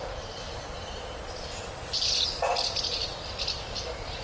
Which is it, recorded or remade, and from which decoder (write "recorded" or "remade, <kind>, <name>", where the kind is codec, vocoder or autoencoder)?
remade, vocoder, BigVGAN v2